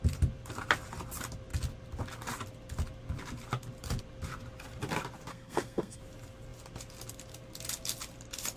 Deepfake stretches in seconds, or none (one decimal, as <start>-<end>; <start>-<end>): 5.3-6.0